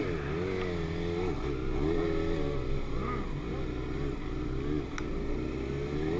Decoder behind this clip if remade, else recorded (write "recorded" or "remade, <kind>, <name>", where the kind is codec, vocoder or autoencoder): recorded